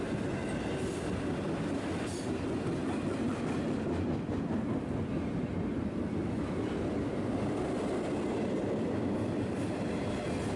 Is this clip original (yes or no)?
yes